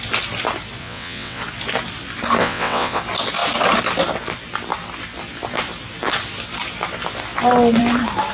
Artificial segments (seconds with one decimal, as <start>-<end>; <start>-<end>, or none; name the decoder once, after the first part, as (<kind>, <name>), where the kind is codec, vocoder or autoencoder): 0.8-1.4 (vocoder, WaveNeXt); 2.4-3.0